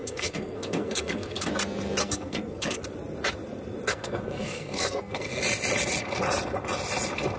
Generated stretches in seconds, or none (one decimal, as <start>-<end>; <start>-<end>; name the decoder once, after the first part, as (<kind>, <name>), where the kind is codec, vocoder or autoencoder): 0.0-1.5 (codec, SNAC); 2.0-2.8; 3.9-5.4